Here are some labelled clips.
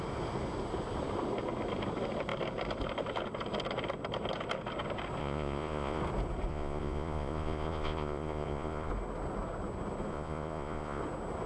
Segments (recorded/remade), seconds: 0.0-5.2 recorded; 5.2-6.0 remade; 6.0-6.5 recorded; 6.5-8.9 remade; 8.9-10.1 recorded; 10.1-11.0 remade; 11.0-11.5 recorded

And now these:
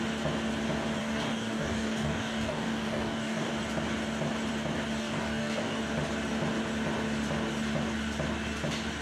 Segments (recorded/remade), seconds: 0.0-1.0 recorded; 1.0-3.5 remade; 3.5-5.0 recorded; 5.0-5.8 remade; 5.8-9.0 recorded